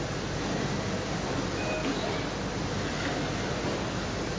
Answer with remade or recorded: recorded